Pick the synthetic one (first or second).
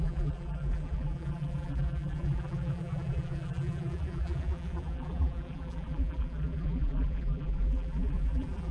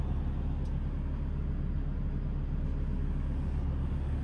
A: first